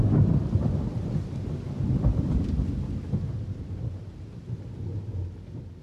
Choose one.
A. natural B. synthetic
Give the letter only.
B